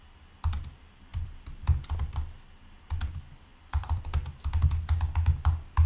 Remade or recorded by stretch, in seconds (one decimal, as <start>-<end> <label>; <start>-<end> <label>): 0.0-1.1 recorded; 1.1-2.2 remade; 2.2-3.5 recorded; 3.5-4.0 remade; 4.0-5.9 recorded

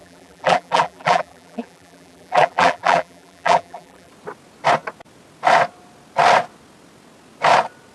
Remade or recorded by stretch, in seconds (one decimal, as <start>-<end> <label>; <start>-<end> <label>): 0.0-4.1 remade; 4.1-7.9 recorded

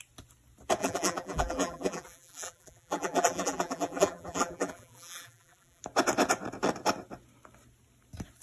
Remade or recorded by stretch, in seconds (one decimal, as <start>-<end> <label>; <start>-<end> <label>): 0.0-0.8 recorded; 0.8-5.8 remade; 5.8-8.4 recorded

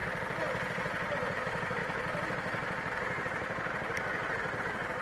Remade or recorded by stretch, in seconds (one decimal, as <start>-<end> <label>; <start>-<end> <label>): 0.0-1.1 recorded; 1.1-5.0 remade

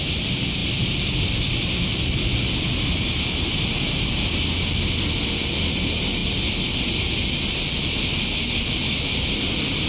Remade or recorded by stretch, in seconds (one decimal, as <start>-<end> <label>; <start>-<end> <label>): 0.0-0.6 recorded; 0.6-2.3 remade; 2.3-9.9 recorded